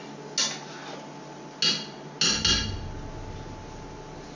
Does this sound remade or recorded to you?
recorded